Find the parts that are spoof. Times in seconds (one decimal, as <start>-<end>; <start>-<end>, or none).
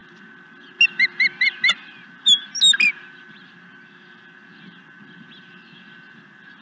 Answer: none